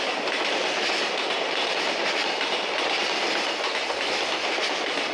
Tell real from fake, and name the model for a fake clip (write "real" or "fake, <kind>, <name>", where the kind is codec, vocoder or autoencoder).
real